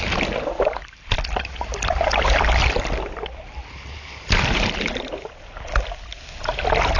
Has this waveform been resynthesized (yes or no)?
no